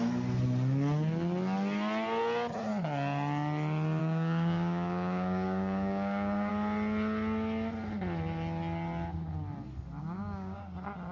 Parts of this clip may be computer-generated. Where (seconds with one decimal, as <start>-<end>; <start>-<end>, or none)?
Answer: 4.0-6.5; 10.0-10.6